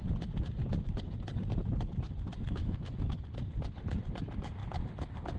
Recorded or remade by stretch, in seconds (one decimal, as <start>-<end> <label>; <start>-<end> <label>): 0.0-2.6 recorded; 2.6-3.2 remade; 3.2-5.4 recorded